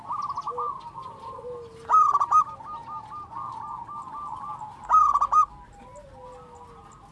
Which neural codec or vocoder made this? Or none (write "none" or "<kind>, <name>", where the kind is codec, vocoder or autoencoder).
none